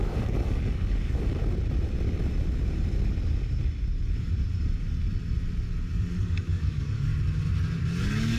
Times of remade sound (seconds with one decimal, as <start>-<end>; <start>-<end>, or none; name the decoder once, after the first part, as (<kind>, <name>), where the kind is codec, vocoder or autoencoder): 0.0-1.4 (codec, DAC); 5.9-7.1; 8.0-8.4